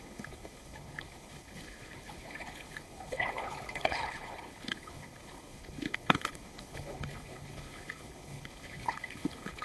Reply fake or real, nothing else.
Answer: fake